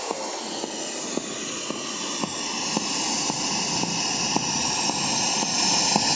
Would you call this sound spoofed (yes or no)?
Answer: no